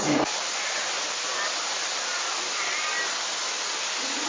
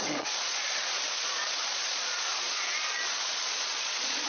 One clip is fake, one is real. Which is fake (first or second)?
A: second